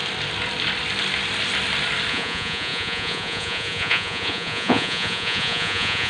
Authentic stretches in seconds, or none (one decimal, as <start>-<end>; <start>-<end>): 0.0-2.1